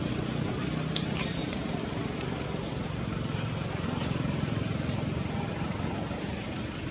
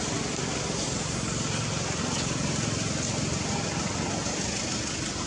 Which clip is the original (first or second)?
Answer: second